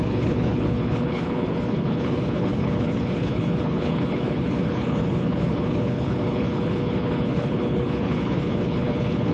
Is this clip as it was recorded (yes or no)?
no